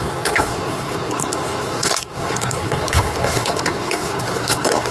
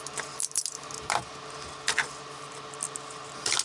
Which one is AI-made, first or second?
first